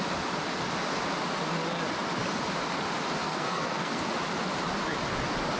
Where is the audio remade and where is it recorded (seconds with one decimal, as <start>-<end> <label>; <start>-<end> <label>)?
0.0-3.2 recorded; 3.2-4.0 remade; 4.0-5.6 recorded